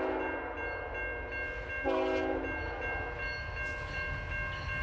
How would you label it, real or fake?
real